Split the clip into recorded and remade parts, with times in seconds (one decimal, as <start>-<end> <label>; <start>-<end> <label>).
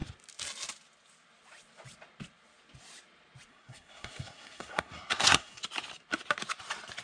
0.0-3.5 recorded; 3.5-5.6 remade; 5.6-7.0 recorded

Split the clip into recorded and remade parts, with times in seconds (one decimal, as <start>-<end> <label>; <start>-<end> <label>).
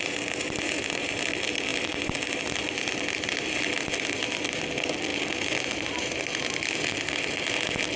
0.0-8.0 recorded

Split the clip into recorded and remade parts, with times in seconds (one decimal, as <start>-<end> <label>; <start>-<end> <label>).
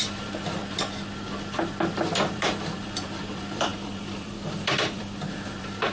0.0-0.6 remade; 0.6-2.3 recorded; 2.3-5.9 remade